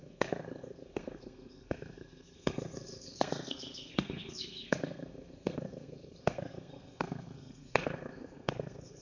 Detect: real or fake fake